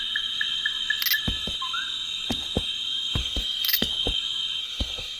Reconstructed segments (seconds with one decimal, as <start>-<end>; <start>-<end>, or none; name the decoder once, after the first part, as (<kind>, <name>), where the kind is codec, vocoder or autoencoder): 3.2-3.9 (codec, SNAC); 4.6-5.2